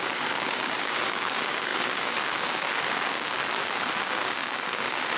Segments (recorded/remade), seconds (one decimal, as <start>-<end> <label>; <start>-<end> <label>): 0.0-3.4 remade; 3.4-4.0 recorded; 4.0-5.2 remade